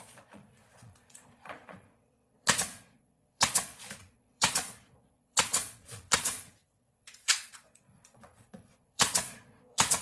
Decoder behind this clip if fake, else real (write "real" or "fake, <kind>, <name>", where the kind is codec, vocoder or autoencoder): fake, vocoder, Vocos